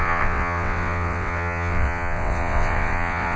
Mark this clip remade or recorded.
remade